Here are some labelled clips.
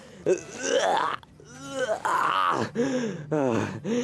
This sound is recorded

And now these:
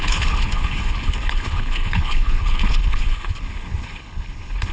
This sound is remade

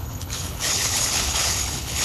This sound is remade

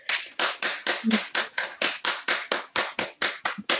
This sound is recorded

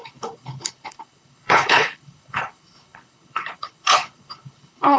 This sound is remade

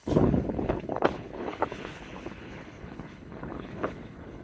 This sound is remade